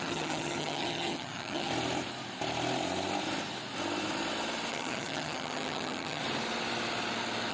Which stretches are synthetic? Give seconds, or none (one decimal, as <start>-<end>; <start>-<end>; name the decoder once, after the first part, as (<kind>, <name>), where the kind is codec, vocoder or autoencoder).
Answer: 0.0-1.7 (vocoder, HiFi-GAN); 4.7-6.2